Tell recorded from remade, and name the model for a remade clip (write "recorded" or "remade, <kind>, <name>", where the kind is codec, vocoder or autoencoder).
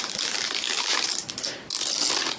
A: recorded